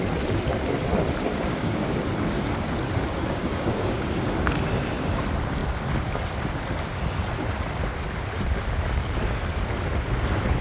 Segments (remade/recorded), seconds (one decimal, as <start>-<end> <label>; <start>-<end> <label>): 0.0-1.3 recorded; 1.3-2.0 remade; 2.0-3.1 recorded; 3.1-4.1 remade; 4.1-10.6 recorded